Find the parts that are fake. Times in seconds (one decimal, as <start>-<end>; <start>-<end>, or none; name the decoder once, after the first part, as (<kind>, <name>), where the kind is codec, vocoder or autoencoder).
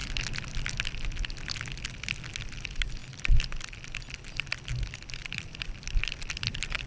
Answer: 5.2-6.9 (vocoder, BigVGAN v2)